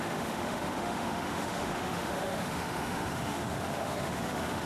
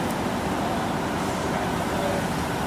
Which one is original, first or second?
second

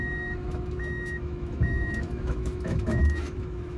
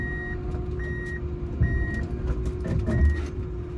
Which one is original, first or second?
second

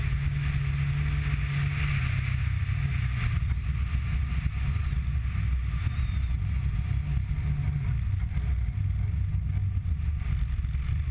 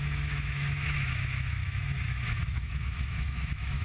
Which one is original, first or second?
first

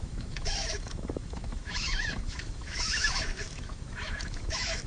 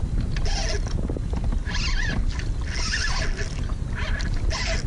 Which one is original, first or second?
second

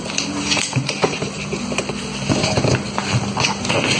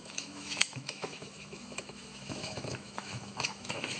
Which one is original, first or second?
first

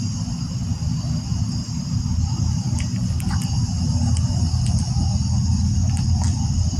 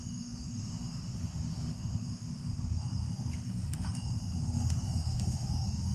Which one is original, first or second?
first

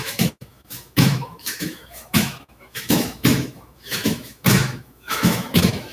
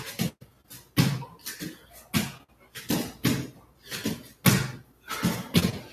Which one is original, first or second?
second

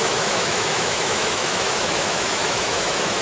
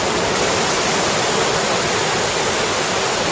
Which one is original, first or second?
second